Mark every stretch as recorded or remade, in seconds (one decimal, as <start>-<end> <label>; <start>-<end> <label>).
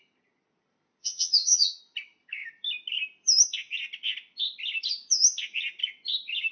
0.0-1.0 recorded; 1.0-1.8 remade; 1.8-6.5 recorded